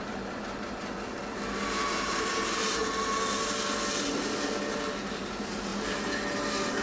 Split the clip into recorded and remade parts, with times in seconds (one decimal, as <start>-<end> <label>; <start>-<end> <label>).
0.0-1.2 remade; 1.2-1.7 recorded; 1.7-2.8 remade; 2.8-5.0 recorded; 5.0-5.7 remade; 5.7-6.8 recorded